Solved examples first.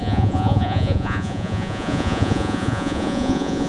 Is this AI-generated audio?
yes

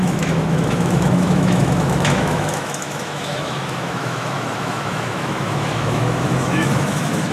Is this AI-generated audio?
yes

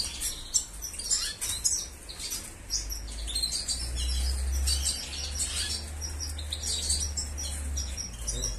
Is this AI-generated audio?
no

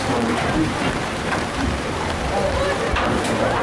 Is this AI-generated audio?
yes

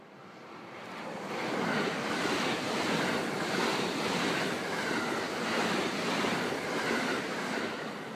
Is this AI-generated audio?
yes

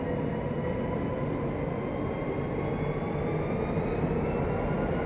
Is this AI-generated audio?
no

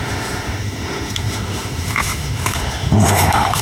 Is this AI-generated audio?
yes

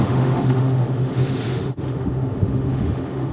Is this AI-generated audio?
yes